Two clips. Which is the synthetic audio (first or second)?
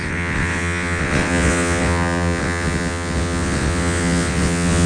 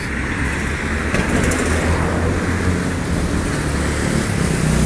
first